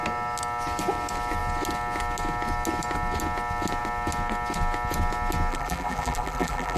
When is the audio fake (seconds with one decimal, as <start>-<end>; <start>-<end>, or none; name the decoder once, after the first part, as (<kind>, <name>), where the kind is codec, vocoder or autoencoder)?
5.5-6.8 (vocoder, BigVGAN v2)